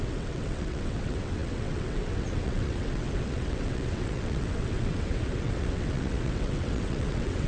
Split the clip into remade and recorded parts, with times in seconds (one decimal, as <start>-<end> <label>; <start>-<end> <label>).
0.0-7.5 remade